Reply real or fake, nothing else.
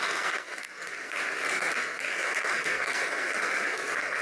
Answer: fake